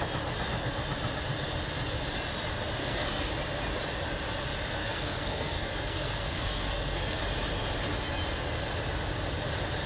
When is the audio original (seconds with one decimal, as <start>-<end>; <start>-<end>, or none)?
0.0-2.8; 3.3-4.8; 7.2-9.9